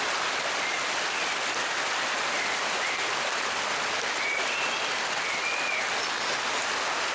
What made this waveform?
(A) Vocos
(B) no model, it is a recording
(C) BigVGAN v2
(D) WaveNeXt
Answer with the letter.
B